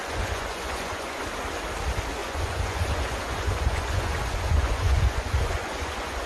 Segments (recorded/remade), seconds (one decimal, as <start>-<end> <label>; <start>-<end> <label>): 0.0-1.2 remade; 1.2-2.2 recorded; 2.2-6.3 remade